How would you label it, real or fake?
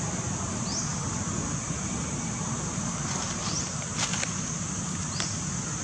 real